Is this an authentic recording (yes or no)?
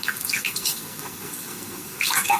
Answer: no